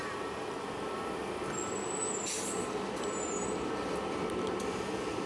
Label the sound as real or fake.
real